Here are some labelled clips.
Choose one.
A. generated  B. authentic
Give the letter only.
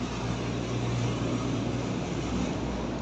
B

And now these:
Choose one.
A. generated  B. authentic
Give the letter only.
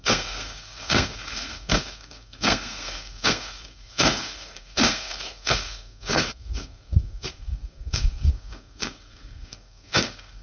A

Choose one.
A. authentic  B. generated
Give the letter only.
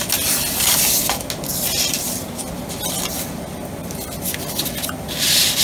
A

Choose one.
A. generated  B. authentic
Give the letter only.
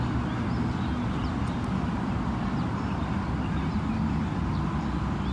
B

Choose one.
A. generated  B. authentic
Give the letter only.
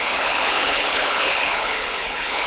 A